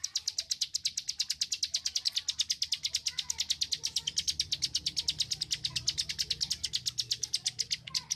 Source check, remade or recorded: recorded